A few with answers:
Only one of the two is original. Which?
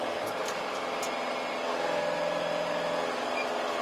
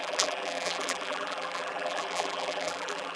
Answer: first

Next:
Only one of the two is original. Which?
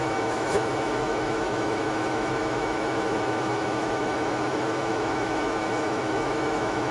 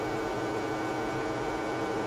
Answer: second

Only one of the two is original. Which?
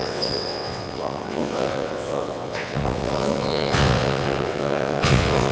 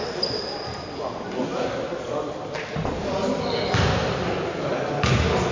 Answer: second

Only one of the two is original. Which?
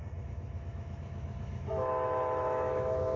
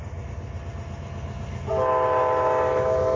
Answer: second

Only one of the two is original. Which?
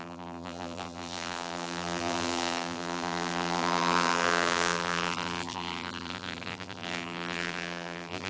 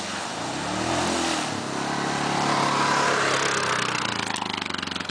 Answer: second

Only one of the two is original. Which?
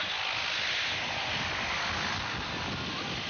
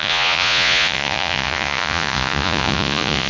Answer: first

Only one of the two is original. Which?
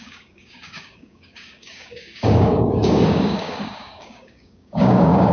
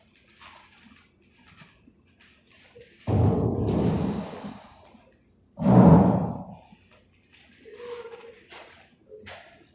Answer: second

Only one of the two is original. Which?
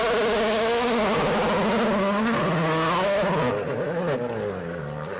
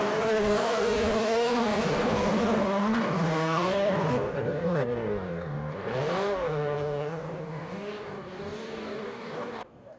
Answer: first